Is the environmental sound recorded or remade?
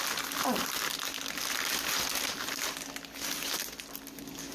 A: recorded